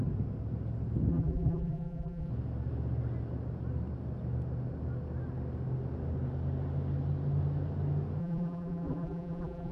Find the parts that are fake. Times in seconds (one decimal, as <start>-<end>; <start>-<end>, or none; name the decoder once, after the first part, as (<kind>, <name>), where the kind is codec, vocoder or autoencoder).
1.1-2.3 (vocoder, BigVGAN v2); 8.2-9.7